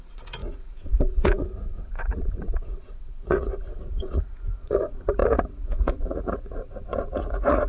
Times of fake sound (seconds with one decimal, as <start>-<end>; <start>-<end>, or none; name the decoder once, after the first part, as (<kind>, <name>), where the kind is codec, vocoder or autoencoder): 0.0-7.7 (vocoder, Vocos)